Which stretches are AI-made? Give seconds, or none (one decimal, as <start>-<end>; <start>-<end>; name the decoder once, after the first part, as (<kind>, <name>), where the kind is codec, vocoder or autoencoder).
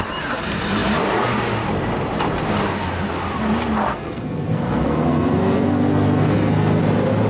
3.9-6.8 (codec, SNAC)